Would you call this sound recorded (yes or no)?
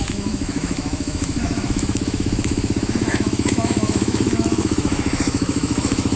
no